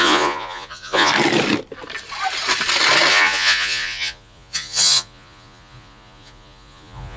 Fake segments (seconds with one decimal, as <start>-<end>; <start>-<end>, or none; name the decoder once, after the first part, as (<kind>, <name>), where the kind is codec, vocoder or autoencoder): 0.0-1.1 (vocoder, Vocos); 3.1-7.2